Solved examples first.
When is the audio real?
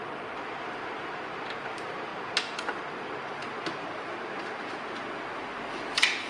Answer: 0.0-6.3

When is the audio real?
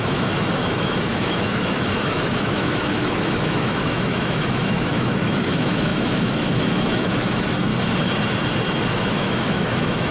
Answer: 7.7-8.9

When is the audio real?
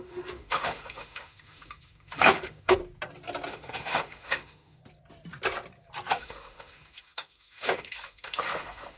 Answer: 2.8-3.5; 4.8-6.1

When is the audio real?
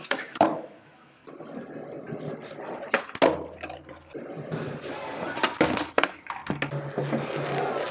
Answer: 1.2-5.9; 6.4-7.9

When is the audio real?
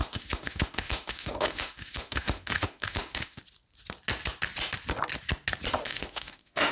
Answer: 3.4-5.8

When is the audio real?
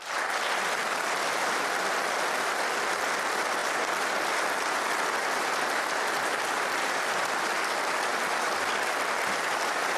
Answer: 0.0-10.0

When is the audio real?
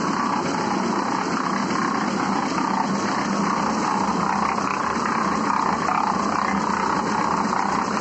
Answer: 0.0-8.0